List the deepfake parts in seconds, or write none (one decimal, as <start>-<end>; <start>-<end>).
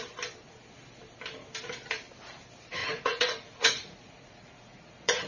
2.8-5.3